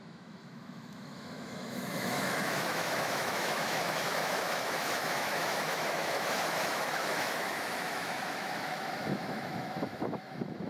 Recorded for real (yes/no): no